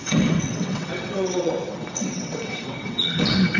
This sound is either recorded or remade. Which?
remade